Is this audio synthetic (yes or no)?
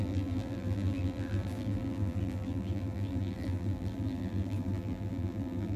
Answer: yes